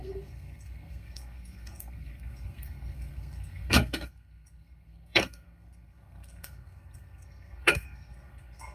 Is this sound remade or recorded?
remade